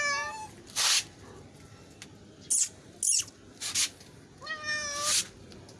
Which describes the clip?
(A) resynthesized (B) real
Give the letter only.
B